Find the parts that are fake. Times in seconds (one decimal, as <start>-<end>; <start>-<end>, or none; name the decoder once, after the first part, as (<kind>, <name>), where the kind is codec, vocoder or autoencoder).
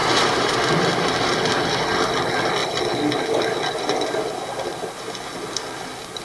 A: 0.0-0.7 (vocoder, BigVGAN v2)